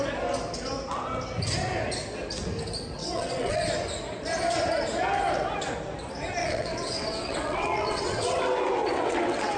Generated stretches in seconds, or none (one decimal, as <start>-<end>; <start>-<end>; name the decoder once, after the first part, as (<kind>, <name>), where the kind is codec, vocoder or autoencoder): 3.0-3.6 (vocoder, WaveNeXt); 6.4-8.4; 8.8-9.6